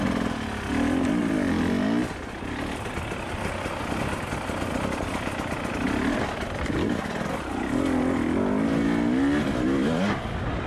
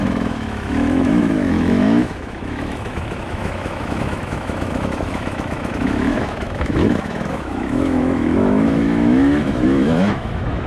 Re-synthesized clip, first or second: second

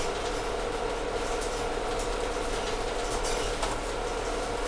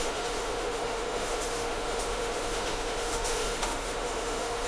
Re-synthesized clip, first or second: second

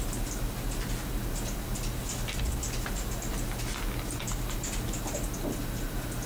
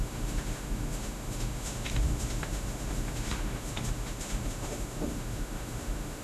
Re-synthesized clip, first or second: second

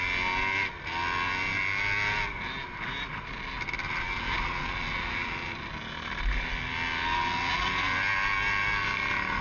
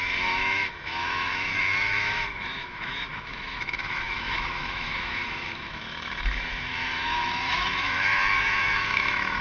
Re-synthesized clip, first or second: second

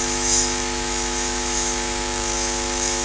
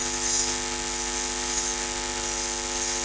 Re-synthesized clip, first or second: first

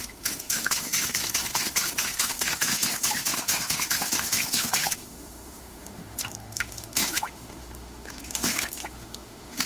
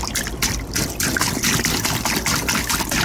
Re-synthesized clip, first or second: first